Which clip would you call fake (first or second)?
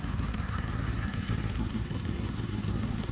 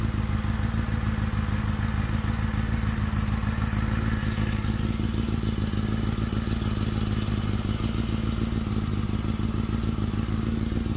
first